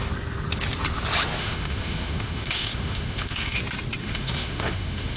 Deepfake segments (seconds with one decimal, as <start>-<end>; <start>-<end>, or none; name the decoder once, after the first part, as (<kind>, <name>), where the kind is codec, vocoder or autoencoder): 1.4-3.6 (autoencoder, DAC-VAE); 4.0-5.2